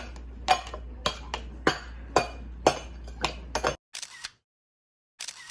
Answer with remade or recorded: recorded